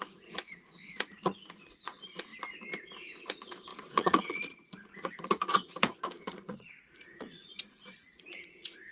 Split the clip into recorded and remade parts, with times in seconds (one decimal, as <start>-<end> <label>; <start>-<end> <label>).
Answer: 0.0-2.3 remade; 2.3-2.8 recorded; 2.8-8.9 remade